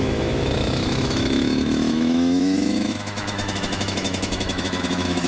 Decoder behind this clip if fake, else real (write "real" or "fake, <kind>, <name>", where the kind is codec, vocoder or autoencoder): fake, autoencoder, DAC-VAE